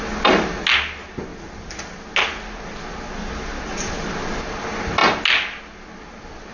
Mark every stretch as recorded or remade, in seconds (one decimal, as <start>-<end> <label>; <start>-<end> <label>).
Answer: 0.0-6.5 recorded